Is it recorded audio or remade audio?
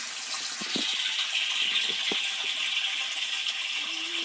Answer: remade